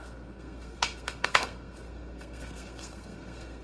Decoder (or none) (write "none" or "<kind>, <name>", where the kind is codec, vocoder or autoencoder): codec, SNAC